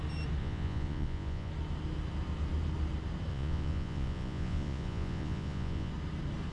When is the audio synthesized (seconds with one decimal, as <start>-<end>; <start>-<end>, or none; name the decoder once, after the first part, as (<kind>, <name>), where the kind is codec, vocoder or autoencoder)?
0.4-1.5 (vocoder, Vocos); 3.3-5.9